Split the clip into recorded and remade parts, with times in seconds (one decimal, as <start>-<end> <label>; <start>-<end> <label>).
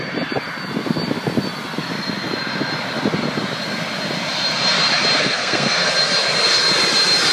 0.0-5.2 recorded; 5.2-5.9 remade; 5.9-7.3 recorded